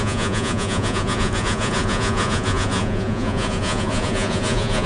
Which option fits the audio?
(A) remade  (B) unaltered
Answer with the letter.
A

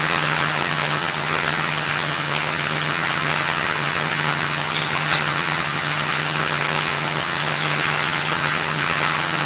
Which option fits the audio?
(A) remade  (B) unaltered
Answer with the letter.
A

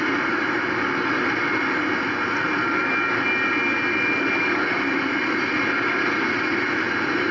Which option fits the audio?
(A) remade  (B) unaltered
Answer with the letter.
B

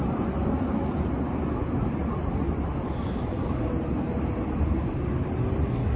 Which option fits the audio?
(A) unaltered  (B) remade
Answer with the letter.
A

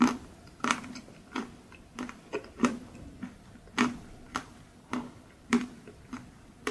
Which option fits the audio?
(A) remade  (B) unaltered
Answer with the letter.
A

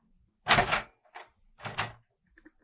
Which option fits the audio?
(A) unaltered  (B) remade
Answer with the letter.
A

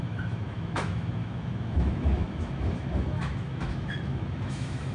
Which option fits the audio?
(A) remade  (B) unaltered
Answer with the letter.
A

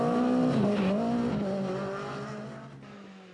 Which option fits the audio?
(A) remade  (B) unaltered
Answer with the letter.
B